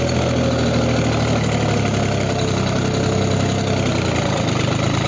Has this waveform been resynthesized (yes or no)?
no